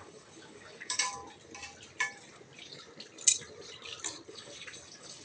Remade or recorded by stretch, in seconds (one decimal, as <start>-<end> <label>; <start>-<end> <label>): 0.0-1.2 remade; 1.2-4.3 recorded; 4.3-5.2 remade